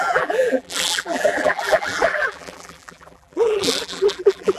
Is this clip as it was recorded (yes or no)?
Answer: no